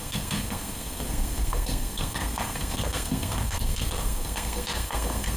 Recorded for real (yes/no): no